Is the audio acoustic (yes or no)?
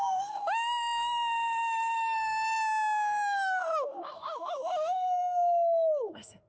no